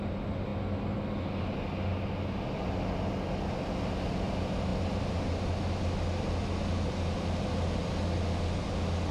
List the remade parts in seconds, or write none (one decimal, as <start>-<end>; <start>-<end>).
none